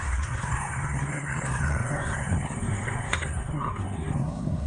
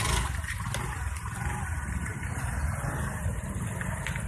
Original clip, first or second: second